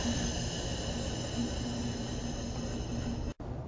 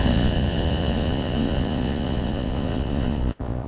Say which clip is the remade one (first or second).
second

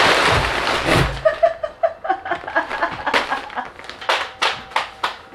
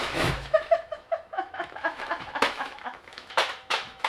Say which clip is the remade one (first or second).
second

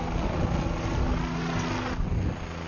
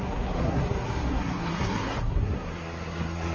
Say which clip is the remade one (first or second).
second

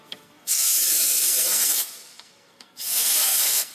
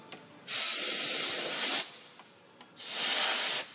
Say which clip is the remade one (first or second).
first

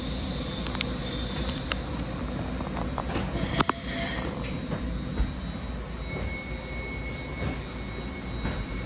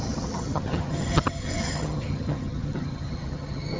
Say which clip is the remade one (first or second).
second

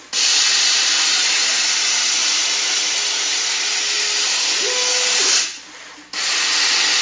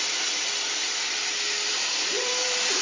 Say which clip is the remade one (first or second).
second